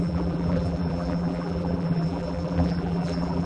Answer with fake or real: fake